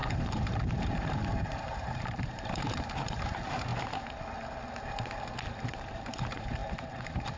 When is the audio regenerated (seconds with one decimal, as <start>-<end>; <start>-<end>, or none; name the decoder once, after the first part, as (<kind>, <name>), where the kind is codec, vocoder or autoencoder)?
0.0-3.7 (vocoder, BigVGAN v2); 5.4-7.4